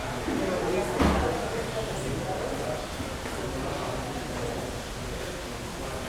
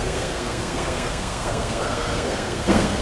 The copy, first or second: second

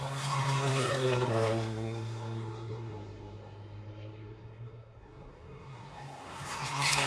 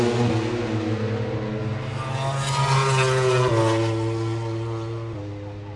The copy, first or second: first